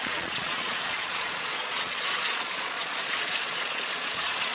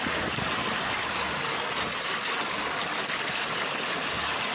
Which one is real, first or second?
second